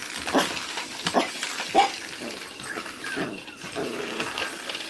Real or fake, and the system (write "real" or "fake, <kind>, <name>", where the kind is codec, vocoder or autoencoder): real